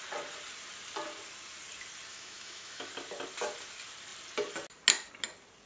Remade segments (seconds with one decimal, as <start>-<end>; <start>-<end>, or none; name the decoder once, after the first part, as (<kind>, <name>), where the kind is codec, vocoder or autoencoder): 2.1-2.9 (autoencoder, DAC-VAE)